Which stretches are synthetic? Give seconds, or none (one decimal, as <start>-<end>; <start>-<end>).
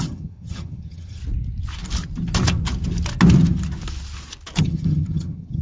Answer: 0.0-1.2; 4.6-5.6